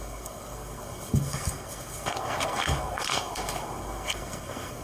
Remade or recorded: remade